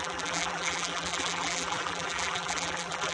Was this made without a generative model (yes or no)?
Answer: no